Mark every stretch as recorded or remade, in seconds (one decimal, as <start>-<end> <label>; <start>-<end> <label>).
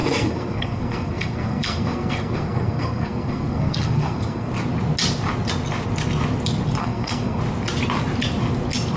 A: 0.0-4.5 remade; 4.5-6.8 recorded; 6.8-7.4 remade; 7.4-9.0 recorded